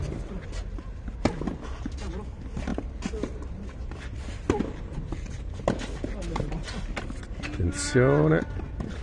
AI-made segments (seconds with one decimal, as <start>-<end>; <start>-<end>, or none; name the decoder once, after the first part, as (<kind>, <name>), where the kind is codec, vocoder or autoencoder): none